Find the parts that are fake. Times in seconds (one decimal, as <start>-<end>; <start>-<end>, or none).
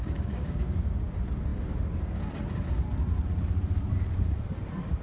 0.0-1.1